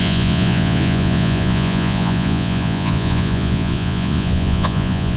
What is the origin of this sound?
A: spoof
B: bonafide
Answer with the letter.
A